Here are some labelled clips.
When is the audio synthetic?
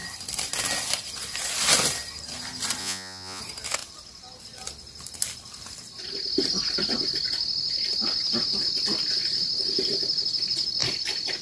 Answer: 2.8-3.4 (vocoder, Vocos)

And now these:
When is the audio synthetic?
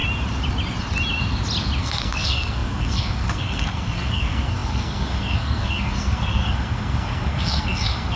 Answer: 1.8-8.2 (codec, SNAC)